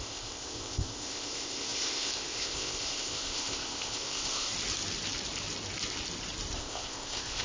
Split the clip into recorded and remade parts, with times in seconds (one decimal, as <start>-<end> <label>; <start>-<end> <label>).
0.0-4.5 remade; 4.5-6.6 recorded; 6.6-7.4 remade